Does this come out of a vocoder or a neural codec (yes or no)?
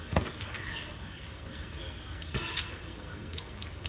yes